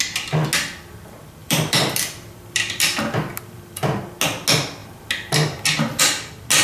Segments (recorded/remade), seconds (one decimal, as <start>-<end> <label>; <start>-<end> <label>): 0.0-1.4 recorded; 1.4-3.8 remade; 3.8-6.6 recorded